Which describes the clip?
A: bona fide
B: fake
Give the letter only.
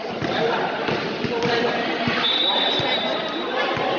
A